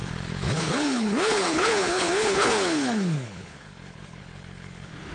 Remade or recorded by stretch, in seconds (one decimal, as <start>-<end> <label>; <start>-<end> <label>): 0.0-5.1 remade